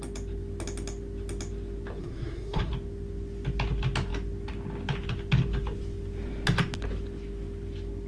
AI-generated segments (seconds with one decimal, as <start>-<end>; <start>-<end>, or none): 2.0-2.7

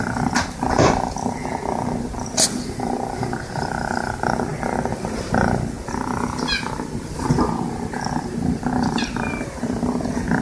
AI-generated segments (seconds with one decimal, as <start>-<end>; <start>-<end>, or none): none